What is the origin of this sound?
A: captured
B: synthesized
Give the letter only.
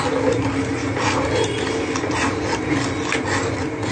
A